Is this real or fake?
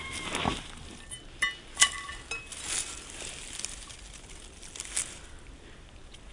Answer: real